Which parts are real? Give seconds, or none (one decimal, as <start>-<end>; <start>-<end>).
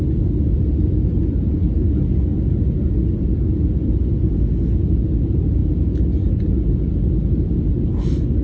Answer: 0.0-5.6; 6.3-8.4